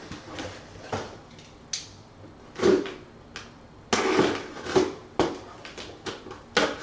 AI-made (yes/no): no